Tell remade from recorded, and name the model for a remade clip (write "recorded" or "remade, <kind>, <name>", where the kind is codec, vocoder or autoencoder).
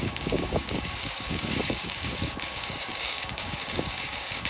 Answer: remade, codec, DAC